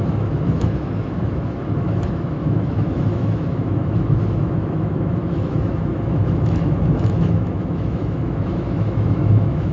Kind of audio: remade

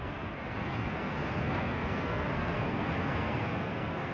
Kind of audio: remade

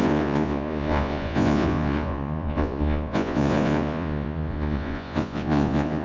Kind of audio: remade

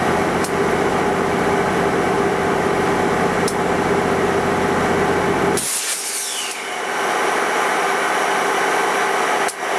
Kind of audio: recorded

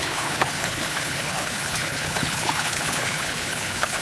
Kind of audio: remade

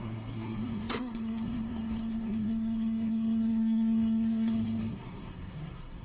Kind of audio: remade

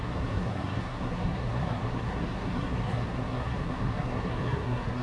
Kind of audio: remade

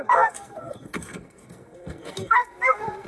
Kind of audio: remade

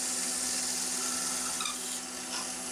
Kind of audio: recorded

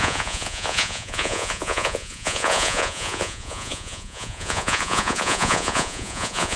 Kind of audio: remade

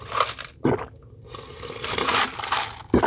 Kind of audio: recorded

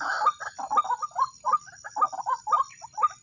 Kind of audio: recorded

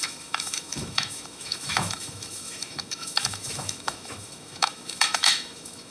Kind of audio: remade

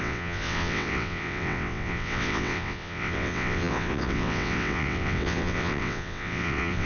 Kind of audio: remade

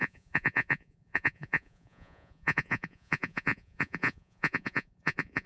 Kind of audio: remade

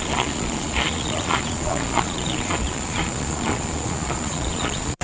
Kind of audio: remade